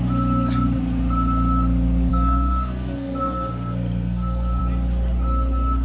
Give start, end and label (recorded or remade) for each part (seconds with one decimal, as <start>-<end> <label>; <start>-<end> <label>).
0.0-2.1 recorded; 2.1-4.6 remade; 4.6-5.8 recorded